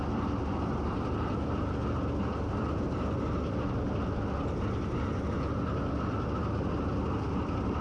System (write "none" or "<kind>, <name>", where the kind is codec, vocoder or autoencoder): none